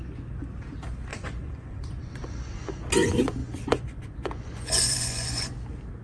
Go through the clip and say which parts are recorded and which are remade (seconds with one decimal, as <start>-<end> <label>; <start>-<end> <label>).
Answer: 0.0-1.1 recorded; 1.1-2.8 remade; 2.8-3.4 recorded; 3.4-5.5 remade; 5.5-6.0 recorded